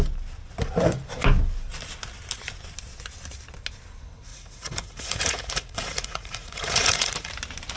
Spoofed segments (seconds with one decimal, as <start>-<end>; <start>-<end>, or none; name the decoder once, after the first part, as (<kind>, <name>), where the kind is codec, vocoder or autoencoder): 4.3-7.3 (vocoder, Vocos)